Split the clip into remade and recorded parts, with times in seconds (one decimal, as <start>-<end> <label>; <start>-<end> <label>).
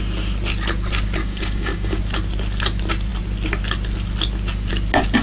0.0-1.2 recorded; 1.2-2.0 remade; 2.0-5.2 recorded